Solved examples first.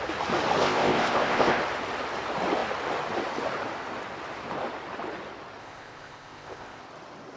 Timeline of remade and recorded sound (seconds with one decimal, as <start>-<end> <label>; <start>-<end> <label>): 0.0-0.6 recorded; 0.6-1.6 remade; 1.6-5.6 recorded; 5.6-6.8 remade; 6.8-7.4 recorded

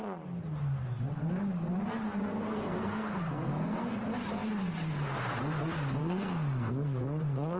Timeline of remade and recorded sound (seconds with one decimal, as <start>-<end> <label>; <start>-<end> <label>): 0.0-2.3 recorded; 2.3-4.0 remade; 4.0-6.0 recorded; 6.0-7.6 remade

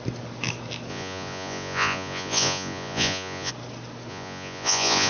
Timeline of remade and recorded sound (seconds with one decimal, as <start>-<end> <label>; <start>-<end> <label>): 0.0-0.9 recorded; 0.9-3.5 remade; 3.5-4.1 recorded; 4.1-5.1 remade

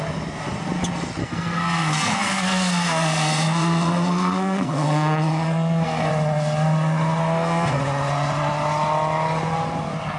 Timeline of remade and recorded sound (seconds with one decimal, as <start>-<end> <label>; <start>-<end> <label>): 0.0-1.2 recorded; 1.2-6.1 remade; 6.1-7.2 recorded; 7.2-7.8 remade; 7.8-10.2 recorded